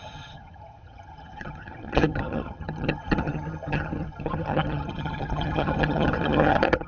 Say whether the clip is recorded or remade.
remade